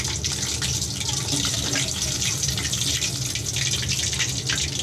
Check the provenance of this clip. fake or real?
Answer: real